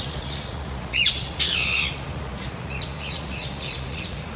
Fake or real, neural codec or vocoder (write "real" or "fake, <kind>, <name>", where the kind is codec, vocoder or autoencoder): fake, vocoder, Vocos